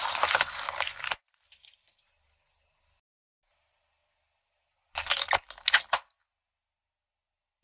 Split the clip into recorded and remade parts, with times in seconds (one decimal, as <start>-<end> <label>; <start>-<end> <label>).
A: 0.0-7.6 recorded